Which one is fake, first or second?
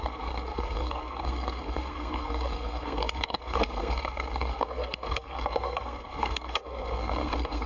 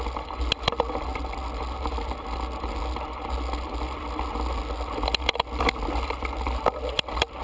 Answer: first